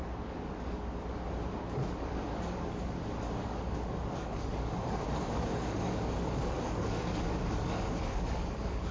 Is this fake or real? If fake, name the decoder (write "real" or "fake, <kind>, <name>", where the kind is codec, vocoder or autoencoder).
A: fake, codec, DAC